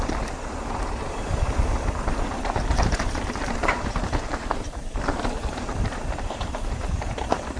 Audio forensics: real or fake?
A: fake